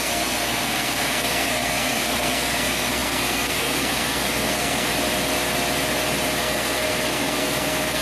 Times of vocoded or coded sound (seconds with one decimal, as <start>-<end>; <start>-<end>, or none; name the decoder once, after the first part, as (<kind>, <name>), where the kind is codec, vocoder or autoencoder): 0.0-4.9 (codec, SNAC); 6.4-8.0